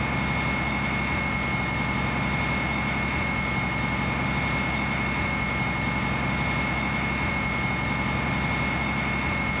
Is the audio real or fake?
real